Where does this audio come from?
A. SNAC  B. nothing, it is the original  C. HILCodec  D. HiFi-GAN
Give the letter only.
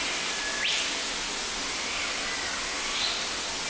B